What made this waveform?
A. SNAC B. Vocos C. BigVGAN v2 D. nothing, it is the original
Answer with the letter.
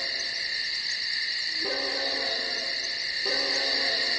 D